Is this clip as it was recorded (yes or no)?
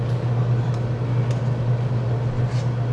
yes